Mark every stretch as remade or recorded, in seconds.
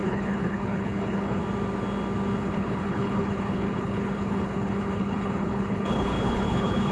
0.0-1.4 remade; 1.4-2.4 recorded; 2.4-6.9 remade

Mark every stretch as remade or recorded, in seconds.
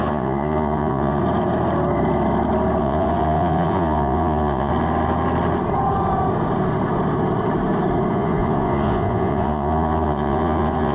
0.0-1.2 remade; 1.2-2.8 recorded; 2.8-4.7 remade; 4.7-8.1 recorded; 8.1-10.9 remade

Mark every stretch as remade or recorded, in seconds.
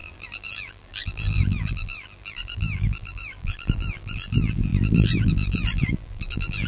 0.0-6.7 remade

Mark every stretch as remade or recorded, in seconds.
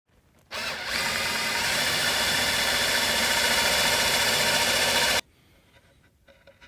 0.0-0.6 recorded; 0.6-2.5 remade; 2.5-3.2 recorded; 3.2-4.3 remade; 4.3-6.7 recorded